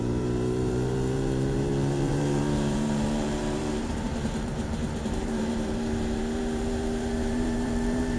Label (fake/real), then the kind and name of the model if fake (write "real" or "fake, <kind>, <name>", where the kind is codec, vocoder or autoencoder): fake, vocoder, BigVGAN v2